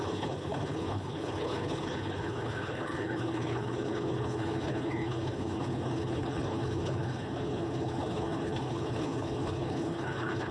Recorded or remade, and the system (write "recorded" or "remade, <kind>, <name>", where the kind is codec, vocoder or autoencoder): remade, codec, HILCodec